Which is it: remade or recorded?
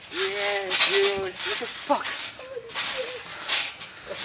recorded